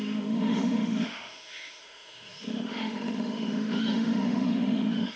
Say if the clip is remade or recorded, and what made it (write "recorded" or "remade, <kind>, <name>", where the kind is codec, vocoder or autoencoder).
remade, autoencoder, DAC-VAE